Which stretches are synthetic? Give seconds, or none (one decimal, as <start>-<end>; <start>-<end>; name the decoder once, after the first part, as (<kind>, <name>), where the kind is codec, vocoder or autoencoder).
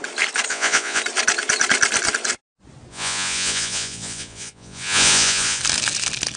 0.5-1.0 (vocoder, Vocos); 2.9-5.6